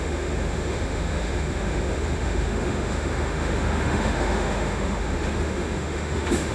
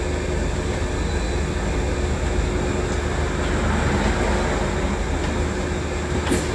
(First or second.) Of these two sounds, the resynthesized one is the first